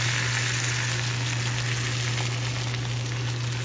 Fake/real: real